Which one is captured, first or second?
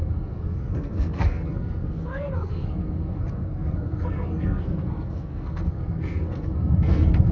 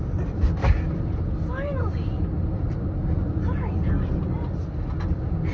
second